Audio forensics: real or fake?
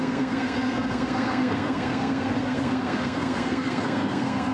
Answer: fake